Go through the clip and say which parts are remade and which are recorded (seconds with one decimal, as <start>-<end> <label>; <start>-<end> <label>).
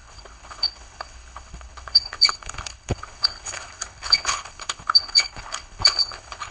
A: 0.0-6.5 remade